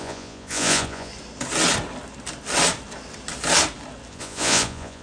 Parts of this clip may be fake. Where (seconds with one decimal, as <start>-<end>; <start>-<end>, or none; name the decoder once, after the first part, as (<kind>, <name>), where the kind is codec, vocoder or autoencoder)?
0.0-1.1 (vocoder, Vocos); 4.1-5.0